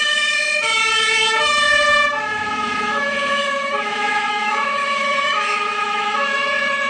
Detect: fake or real fake